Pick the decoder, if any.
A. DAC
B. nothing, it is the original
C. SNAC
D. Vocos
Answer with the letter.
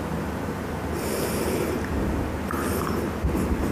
B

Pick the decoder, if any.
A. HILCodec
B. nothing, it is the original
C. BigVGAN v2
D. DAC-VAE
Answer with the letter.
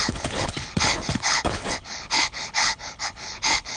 A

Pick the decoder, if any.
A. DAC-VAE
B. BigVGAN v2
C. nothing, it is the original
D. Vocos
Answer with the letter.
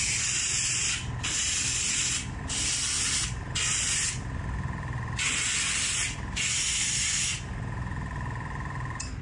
C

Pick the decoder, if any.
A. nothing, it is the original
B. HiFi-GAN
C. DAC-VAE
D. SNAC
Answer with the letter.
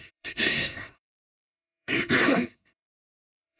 D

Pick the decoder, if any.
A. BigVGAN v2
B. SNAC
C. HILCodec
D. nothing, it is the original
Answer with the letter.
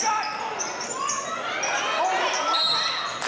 D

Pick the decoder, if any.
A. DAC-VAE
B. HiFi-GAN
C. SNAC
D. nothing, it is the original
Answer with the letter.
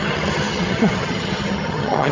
B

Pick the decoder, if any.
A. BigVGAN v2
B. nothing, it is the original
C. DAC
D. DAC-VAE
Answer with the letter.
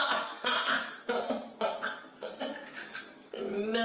B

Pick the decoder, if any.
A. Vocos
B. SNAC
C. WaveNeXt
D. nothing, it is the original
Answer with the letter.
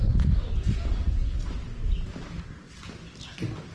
D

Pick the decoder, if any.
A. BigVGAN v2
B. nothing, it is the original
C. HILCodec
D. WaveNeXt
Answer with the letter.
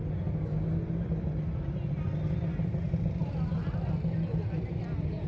B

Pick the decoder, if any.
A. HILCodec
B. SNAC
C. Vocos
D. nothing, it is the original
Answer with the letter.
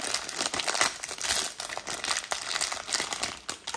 D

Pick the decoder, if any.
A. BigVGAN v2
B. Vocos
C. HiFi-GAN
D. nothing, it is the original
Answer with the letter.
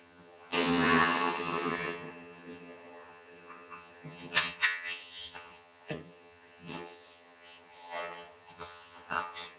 C